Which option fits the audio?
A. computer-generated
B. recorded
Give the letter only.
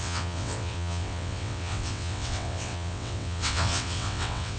A